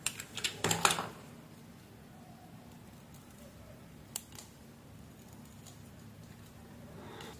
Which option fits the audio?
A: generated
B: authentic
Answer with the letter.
B